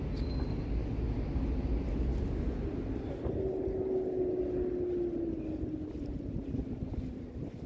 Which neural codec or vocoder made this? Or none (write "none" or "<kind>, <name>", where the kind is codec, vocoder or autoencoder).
none